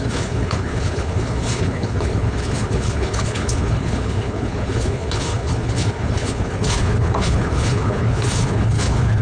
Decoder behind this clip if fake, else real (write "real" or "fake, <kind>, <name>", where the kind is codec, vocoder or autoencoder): fake, codec, HILCodec